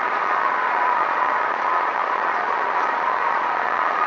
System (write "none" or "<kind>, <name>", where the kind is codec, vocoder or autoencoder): vocoder, Vocos